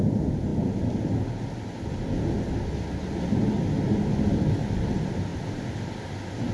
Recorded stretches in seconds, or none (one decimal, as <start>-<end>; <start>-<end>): 0.0-6.5